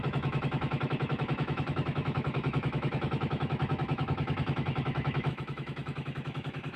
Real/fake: fake